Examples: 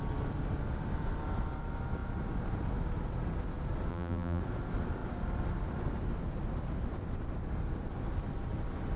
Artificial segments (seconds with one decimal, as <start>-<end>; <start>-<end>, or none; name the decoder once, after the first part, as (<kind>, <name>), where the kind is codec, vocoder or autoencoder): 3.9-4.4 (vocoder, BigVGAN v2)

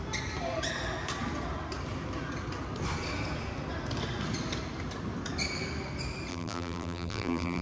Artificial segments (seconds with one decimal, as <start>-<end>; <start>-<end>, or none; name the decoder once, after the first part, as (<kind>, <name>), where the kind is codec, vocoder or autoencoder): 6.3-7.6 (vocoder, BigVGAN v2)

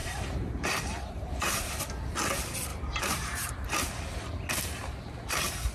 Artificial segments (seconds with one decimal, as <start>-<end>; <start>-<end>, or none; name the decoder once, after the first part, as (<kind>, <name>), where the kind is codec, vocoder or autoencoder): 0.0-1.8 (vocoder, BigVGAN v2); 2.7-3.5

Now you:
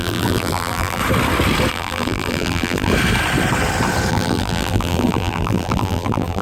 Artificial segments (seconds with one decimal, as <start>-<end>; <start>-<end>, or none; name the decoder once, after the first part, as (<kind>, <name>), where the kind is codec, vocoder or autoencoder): 0.0-1.0 (vocoder, BigVGAN v2); 1.7-2.9; 4.1-6.4